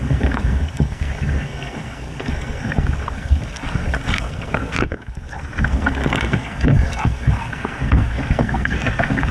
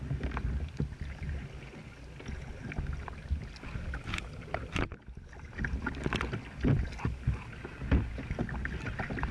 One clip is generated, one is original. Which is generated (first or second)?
first